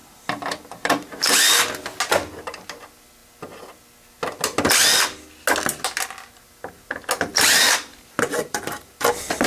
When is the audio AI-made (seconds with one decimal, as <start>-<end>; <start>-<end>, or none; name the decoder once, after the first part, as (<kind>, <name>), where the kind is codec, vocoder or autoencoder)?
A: 0.0-1.4 (vocoder, BigVGAN v2); 7.3-8.9